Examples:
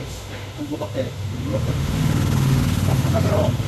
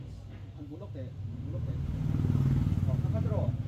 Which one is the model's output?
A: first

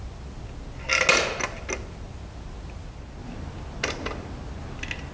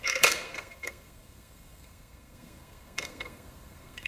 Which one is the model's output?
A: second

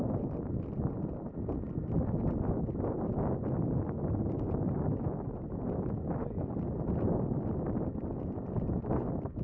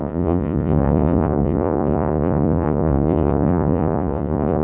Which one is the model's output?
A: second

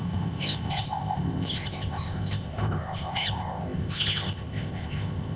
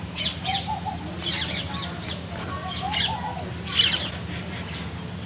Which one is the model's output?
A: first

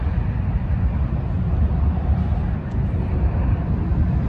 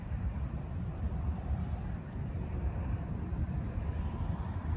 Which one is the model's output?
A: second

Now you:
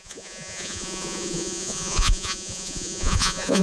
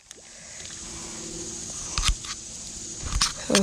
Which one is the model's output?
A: first